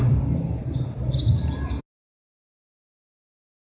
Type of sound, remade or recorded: recorded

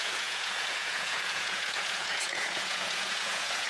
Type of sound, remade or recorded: remade